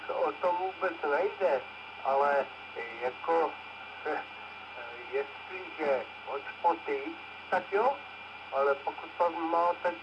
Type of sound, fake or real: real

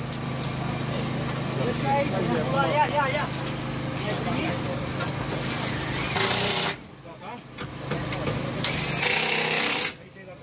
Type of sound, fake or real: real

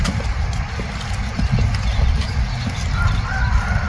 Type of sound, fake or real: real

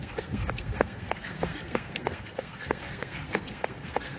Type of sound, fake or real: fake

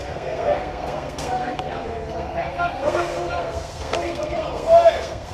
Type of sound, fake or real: fake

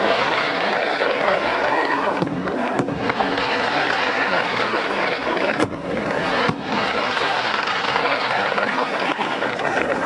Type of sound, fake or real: fake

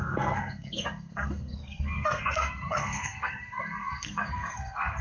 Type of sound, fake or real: fake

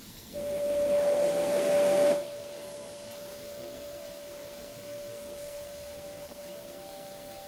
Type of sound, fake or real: fake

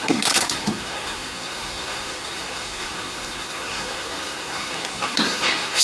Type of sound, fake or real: fake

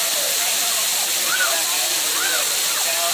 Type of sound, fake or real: real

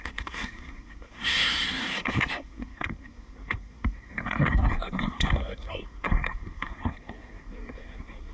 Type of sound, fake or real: fake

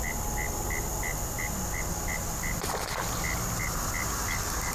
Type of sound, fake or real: real